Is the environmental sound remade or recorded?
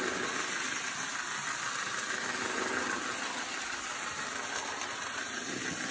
recorded